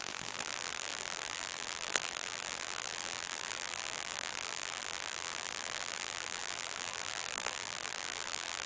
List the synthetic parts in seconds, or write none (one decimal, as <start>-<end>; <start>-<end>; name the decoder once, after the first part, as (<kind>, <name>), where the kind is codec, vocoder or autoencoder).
0.0-8.7 (vocoder, BigVGAN v2)